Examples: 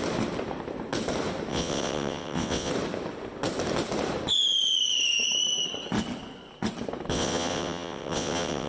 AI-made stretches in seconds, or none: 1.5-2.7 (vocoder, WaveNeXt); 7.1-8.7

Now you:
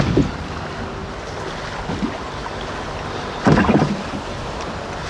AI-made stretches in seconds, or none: none

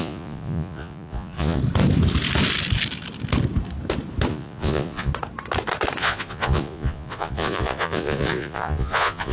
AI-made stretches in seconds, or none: 0.0-1.6 (vocoder, Vocos); 4.3-5.1; 6.0-9.3

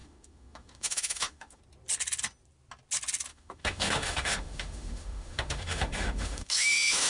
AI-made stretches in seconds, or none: 0.0-1.6 (autoencoder, DAC-VAE); 3.3-7.1

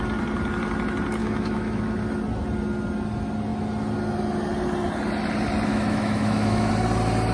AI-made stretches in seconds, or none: 1.2-1.8 (autoencoder, DAC-VAE); 5.7-6.7

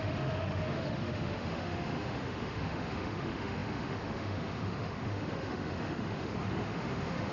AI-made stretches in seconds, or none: 0.0-7.3 (autoencoder, DAC-VAE)

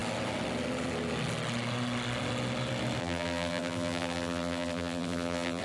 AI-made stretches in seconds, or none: 3.0-5.6 (vocoder, BigVGAN v2)